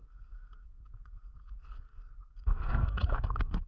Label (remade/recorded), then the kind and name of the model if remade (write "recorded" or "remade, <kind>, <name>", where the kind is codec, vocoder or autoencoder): remade, codec, SNAC